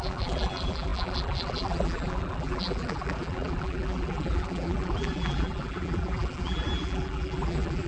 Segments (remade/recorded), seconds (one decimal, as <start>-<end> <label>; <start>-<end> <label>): 0.0-7.9 remade